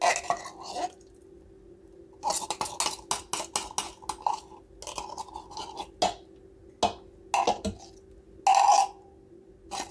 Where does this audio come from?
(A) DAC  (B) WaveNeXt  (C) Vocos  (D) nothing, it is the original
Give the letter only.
D